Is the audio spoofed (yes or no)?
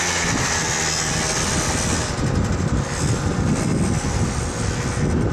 no